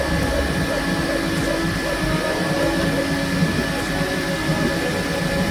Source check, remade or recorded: recorded